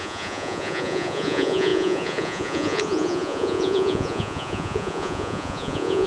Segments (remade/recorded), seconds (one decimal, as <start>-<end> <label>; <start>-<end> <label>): 0.0-6.1 remade